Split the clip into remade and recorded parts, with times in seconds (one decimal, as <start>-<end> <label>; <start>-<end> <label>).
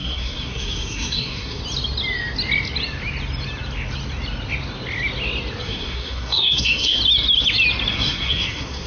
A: 0.0-1.6 remade; 1.6-5.6 recorded; 5.6-7.0 remade; 7.0-7.9 recorded; 7.9-8.9 remade